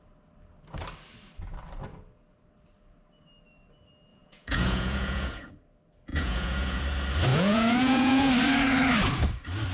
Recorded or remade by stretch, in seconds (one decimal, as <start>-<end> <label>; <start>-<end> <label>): 0.0-4.1 recorded; 4.1-5.5 remade; 5.5-6.1 recorded; 6.1-6.8 remade; 6.8-7.3 recorded; 7.3-8.3 remade; 8.3-9.7 recorded